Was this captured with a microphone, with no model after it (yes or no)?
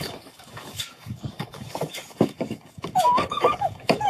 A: no